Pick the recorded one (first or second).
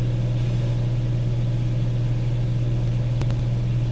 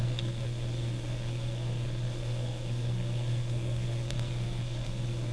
first